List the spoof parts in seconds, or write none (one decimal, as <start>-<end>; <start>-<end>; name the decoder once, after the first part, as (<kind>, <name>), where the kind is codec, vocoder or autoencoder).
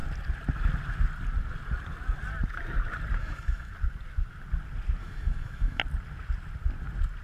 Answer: 3.2-3.7 (autoencoder, DAC-VAE); 5.0-5.8